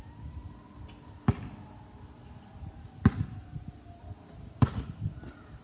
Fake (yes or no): no